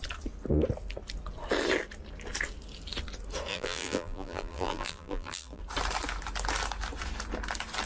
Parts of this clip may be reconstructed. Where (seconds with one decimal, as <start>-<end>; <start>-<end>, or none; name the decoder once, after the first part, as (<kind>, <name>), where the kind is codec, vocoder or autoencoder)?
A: 3.5-5.6 (vocoder, BigVGAN v2)